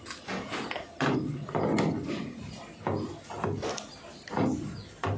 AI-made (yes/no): no